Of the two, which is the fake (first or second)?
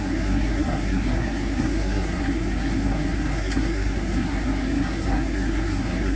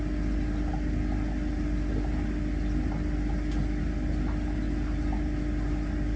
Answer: first